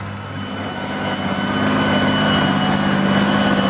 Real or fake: real